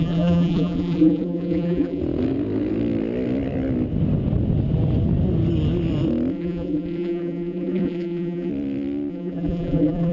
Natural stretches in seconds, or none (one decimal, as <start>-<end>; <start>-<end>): 2.0-6.3; 8.5-9.1